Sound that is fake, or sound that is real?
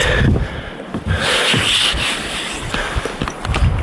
real